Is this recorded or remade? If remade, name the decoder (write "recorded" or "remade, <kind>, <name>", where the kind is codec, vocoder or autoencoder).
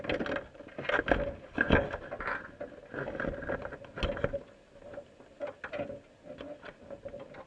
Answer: recorded